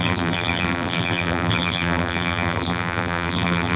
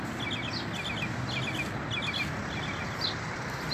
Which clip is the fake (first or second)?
first